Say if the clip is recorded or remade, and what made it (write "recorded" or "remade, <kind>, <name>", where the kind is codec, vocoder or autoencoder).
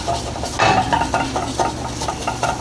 recorded